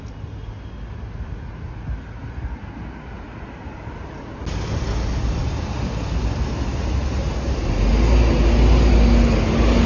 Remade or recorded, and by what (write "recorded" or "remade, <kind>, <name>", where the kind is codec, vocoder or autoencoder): recorded